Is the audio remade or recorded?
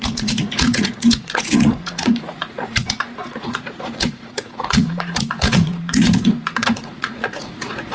remade